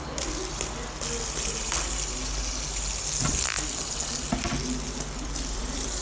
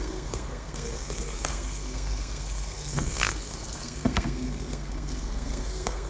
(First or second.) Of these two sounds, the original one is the first